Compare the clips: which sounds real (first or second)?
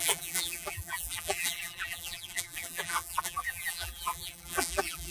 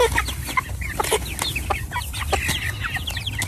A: second